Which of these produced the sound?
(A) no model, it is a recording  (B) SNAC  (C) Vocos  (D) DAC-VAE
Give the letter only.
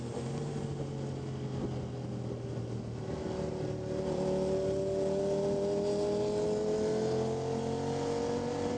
A